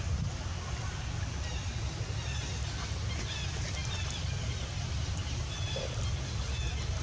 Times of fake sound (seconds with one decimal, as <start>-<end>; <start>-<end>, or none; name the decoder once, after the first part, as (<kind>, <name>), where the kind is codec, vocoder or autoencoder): none